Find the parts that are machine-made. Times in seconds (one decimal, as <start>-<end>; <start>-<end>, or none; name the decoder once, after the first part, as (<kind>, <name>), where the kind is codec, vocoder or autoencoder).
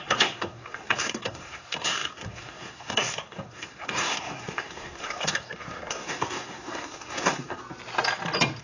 0.0-7.6 (codec, SNAC)